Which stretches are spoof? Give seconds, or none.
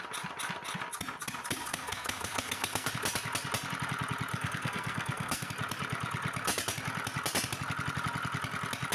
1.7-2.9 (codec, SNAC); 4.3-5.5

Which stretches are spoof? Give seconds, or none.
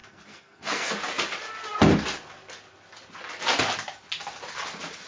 0.0-0.9 (codec, SNAC)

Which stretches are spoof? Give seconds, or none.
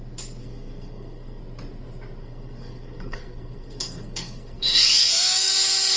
0.4-1.4 (codec, SNAC); 2.2-5.5